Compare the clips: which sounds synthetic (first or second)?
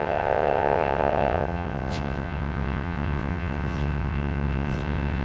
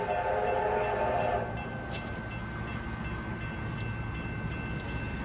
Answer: first